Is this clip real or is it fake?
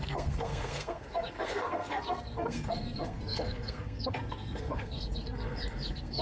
fake